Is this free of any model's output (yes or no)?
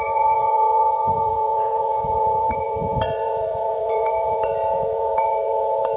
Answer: no